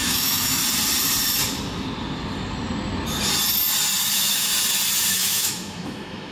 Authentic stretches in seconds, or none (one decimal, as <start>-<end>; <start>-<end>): 0.6-4.1; 4.5-5.1